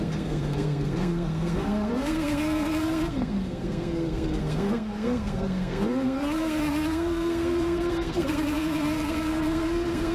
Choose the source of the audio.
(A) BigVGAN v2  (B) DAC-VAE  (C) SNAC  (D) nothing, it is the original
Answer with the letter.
C